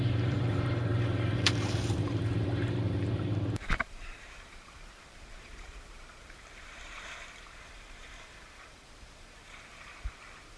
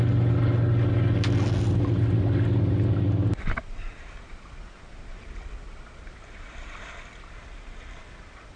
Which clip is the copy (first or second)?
first